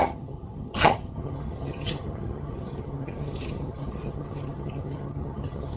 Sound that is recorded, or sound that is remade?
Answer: remade